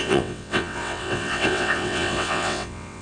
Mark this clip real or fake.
fake